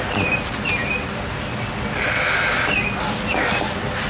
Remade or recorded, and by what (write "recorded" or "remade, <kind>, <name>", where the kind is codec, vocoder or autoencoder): recorded